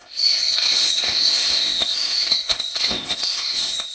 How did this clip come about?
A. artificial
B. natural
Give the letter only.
A